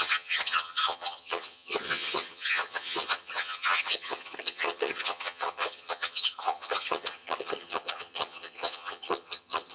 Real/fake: fake